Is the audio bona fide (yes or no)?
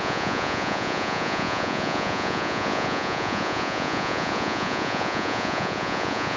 no